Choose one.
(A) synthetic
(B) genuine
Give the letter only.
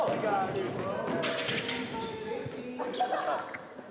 B